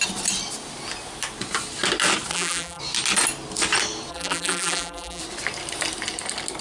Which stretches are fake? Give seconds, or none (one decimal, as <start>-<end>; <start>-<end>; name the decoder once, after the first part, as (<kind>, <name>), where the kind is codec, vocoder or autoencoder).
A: 2.3-2.8 (vocoder, BigVGAN v2); 4.1-5.2